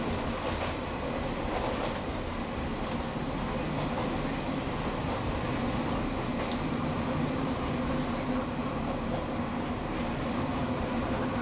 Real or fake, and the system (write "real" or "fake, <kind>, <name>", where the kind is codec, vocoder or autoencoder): real